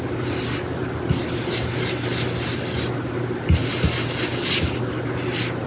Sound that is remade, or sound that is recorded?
recorded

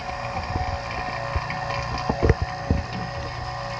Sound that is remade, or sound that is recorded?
recorded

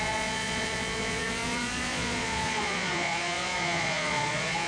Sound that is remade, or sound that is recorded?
remade